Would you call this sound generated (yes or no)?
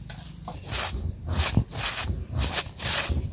no